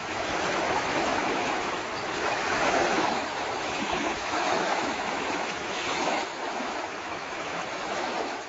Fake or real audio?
fake